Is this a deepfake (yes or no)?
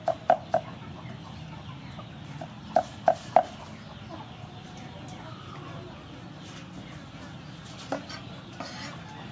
no